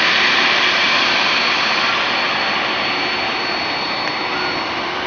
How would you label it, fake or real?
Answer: real